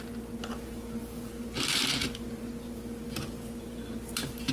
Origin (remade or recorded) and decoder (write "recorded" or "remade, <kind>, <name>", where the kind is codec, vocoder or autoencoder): recorded